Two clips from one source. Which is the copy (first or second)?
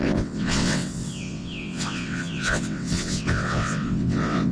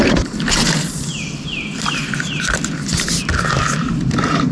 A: first